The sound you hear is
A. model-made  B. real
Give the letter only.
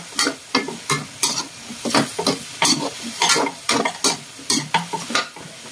B